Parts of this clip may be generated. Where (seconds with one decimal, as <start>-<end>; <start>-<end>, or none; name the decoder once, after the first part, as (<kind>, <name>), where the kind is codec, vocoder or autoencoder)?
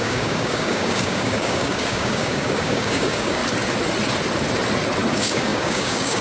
0.0-3.4 (codec, DAC); 5.1-6.2